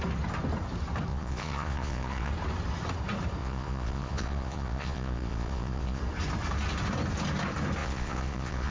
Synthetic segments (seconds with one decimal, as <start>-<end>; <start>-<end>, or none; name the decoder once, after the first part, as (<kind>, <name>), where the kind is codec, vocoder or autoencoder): 1.1-2.3 (vocoder, Vocos); 3.4-6.0; 7.8-8.7